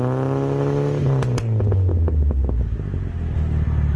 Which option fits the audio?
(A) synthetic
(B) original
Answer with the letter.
B